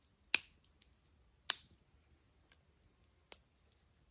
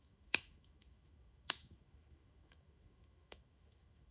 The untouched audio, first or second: first